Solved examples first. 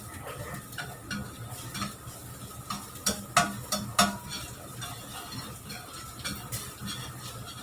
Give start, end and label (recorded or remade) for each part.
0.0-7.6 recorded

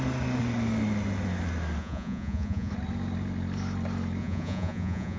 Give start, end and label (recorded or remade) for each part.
0.0-1.8 recorded; 1.8-2.7 remade; 2.7-4.2 recorded; 4.2-5.2 remade

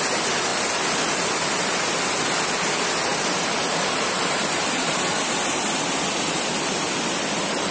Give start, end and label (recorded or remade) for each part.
0.0-7.7 recorded

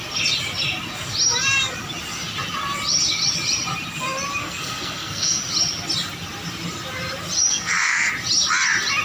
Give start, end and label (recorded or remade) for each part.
0.0-4.4 recorded; 4.4-5.4 remade; 5.4-7.5 recorded; 7.5-8.1 remade; 8.1-9.0 recorded

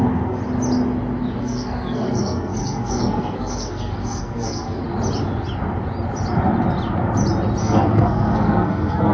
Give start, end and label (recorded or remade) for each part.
0.0-0.4 remade; 0.4-1.4 recorded; 1.4-4.8 remade; 4.8-7.6 recorded; 7.6-9.1 remade

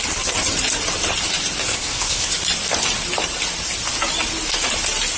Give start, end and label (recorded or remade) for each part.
0.0-1.7 recorded; 1.7-2.3 remade; 2.3-5.2 recorded